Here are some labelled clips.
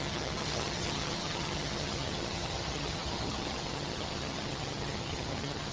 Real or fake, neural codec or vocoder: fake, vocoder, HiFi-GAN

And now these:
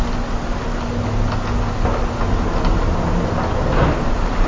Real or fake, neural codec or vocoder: real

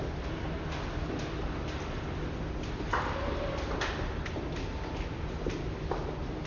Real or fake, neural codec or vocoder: real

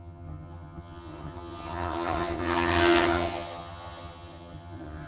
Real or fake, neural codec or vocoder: fake, vocoder, HiFi-GAN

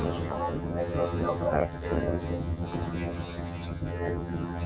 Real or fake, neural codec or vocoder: fake, vocoder, HiFi-GAN